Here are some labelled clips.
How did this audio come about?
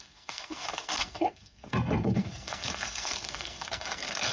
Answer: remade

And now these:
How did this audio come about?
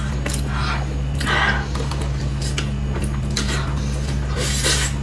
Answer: recorded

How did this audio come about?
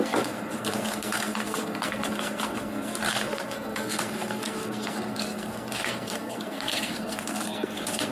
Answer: remade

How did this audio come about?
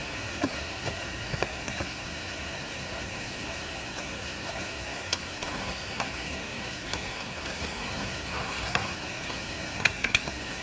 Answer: remade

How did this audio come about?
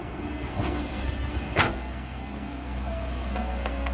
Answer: remade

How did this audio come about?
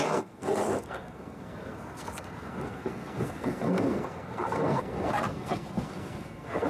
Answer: remade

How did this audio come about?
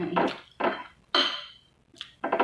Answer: recorded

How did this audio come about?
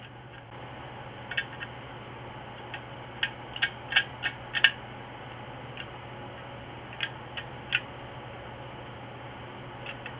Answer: recorded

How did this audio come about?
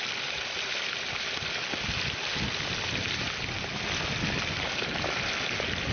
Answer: recorded